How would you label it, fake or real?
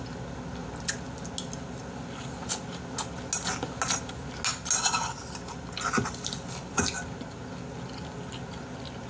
real